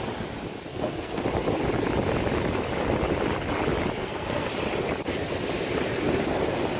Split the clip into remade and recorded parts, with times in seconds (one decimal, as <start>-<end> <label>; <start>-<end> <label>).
0.0-0.7 recorded; 0.7-1.2 remade; 1.2-4.0 recorded; 4.0-4.5 remade; 4.5-6.8 recorded